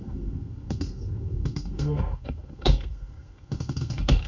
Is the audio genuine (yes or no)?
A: no